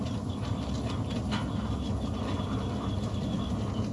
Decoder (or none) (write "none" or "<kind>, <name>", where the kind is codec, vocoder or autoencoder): none